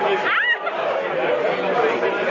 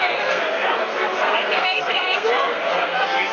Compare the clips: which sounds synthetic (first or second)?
second